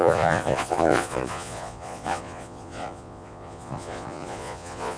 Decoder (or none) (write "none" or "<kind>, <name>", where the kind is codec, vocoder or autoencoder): vocoder, Vocos